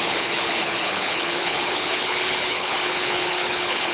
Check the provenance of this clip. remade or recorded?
remade